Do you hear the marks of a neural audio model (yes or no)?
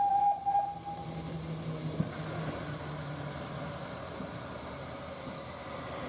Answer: no